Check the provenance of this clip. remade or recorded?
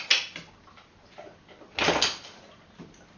recorded